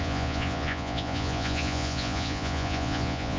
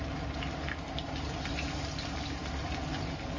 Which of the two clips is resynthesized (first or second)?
first